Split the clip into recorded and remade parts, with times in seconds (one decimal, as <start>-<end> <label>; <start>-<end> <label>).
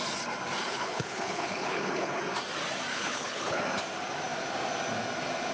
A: 0.0-0.6 recorded; 0.6-2.2 remade; 2.2-2.9 recorded; 2.9-3.6 remade; 3.6-5.5 recorded